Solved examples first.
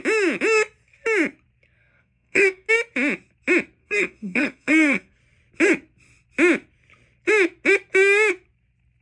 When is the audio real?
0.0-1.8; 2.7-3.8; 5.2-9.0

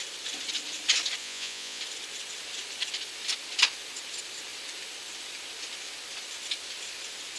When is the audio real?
0.0-1.2; 1.8-7.4

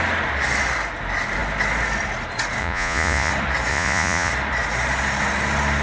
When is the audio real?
0.0-2.6; 3.3-3.7; 4.3-5.8

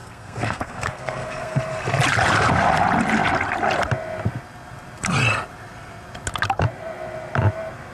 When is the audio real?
1.6-7.9